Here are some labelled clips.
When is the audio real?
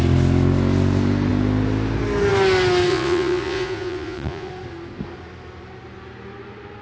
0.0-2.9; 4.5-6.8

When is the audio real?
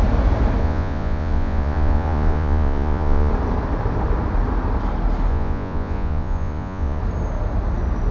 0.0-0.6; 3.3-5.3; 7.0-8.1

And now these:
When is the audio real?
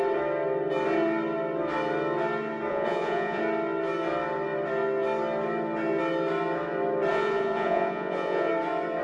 0.0-2.7; 3.4-7.1; 8.5-9.0